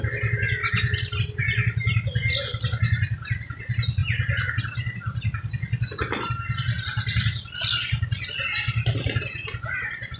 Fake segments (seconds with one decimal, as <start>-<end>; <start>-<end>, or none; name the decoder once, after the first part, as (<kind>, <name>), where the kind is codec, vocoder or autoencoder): none